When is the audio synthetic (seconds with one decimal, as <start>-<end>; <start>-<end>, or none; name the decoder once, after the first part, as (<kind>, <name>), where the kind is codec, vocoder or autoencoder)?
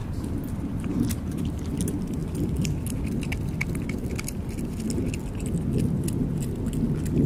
0.0-0.9 (vocoder, BigVGAN v2); 2.2-4.7